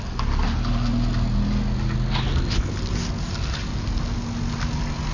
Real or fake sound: real